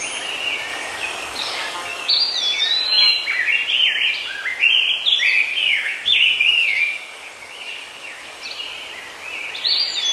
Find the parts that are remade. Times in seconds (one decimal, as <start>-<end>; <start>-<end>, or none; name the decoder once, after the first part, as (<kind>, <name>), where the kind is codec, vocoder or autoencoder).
0.7-2.1 (codec, DAC); 5.5-8.4